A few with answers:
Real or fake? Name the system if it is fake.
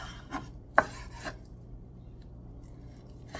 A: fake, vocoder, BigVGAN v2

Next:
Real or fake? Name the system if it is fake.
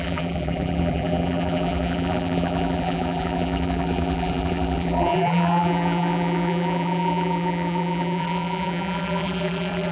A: fake, vocoder, BigVGAN v2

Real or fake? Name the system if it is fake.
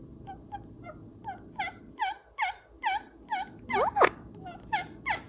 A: fake, vocoder, BigVGAN v2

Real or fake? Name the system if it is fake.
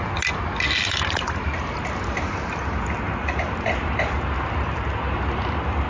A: real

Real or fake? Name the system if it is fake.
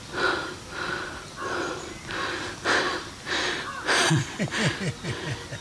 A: real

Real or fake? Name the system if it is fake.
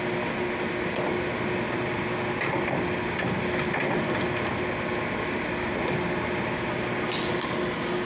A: real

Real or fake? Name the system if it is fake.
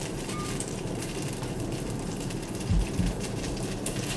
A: fake, vocoder, BigVGAN v2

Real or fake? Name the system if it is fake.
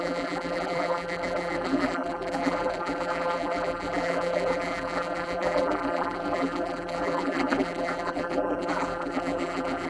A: fake, vocoder, BigVGAN v2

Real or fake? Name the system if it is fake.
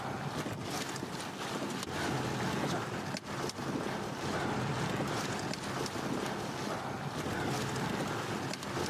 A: real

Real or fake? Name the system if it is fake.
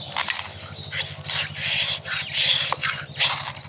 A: real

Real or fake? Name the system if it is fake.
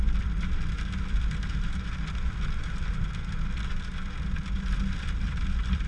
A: real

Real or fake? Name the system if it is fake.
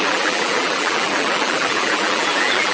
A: fake, vocoder, BigVGAN v2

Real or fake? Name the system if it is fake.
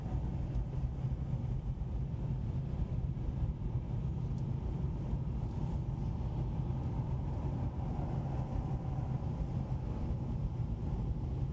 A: real